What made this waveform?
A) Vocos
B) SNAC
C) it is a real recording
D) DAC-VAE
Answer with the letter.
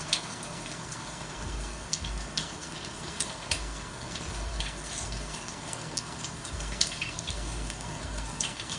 B